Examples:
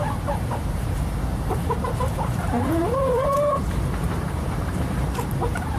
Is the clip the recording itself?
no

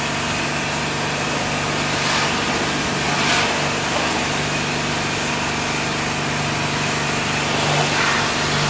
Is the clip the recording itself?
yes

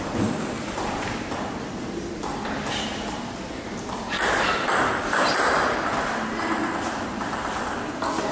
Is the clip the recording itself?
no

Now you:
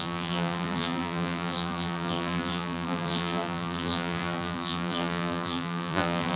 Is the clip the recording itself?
no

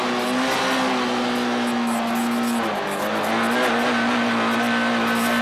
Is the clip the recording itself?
yes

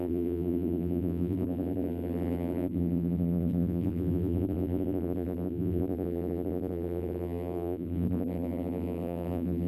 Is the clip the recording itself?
no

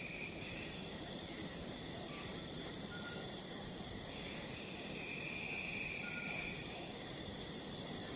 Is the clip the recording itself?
no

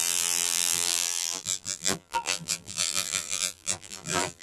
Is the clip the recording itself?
no